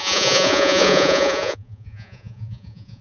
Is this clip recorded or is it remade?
remade